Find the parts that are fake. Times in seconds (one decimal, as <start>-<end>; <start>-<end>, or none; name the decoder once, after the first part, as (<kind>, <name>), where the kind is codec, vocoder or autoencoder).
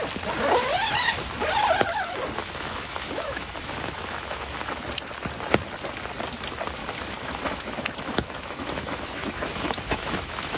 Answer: 2.4-4.8 (autoencoder, DAC-VAE); 6.8-10.6